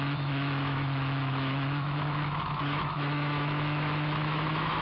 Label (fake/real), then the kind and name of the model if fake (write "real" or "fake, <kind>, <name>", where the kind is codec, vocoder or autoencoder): fake, autoencoder, DAC-VAE